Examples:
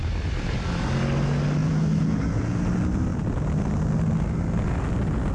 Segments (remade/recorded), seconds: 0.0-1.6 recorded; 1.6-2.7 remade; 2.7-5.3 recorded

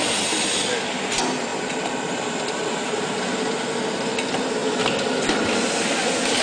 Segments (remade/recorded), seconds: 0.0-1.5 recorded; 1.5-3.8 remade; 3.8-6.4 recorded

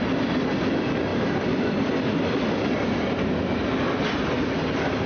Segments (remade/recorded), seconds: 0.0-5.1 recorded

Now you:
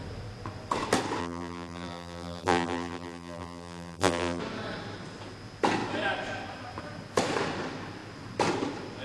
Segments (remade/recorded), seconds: 0.0-1.2 recorded; 1.2-4.4 remade; 4.4-9.0 recorded

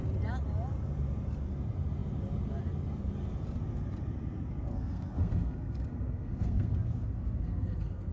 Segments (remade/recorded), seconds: 0.0-4.7 recorded; 4.7-8.1 remade